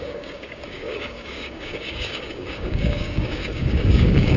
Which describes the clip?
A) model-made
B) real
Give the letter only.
A